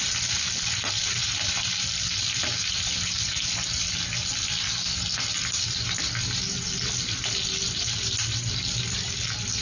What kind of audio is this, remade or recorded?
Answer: recorded